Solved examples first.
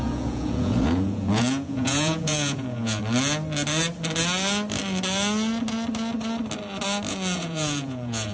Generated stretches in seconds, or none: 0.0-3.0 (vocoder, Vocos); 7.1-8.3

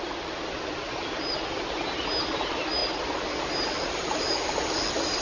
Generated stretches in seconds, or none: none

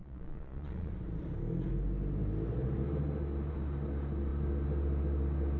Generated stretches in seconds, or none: 0.0-0.9 (vocoder, Vocos)